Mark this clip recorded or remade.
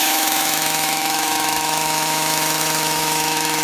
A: remade